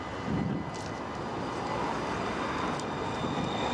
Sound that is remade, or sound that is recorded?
recorded